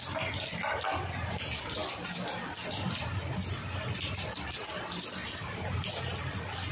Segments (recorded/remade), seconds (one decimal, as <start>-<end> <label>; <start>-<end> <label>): 0.0-6.7 recorded